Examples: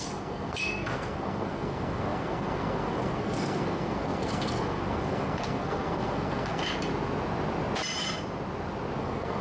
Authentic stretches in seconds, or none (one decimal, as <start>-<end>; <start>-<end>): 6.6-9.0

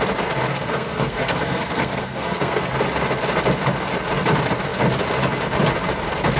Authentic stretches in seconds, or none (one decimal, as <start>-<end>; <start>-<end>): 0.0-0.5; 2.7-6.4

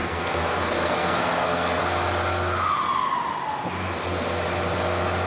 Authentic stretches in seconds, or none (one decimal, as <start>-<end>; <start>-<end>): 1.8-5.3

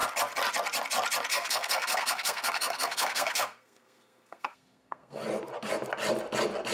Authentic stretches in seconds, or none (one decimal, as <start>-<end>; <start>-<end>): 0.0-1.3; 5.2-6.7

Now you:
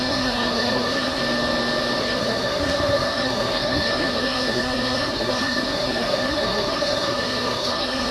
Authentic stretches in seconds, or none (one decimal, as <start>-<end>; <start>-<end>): 1.2-2.0